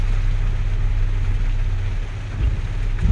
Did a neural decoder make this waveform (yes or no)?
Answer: no